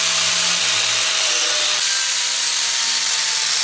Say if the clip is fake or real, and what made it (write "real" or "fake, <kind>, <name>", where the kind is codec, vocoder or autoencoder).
real